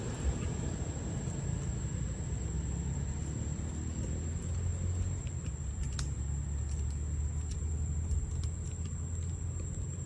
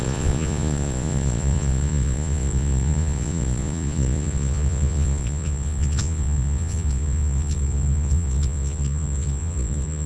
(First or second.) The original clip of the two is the first